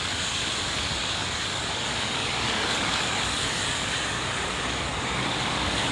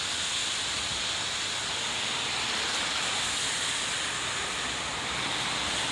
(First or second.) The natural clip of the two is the second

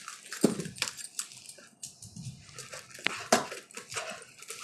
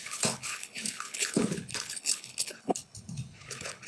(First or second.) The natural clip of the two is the first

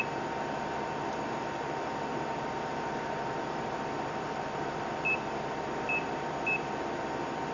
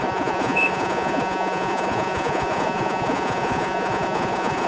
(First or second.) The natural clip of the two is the first